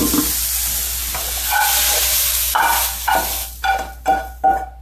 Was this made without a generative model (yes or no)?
yes